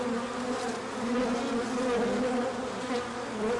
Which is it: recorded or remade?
recorded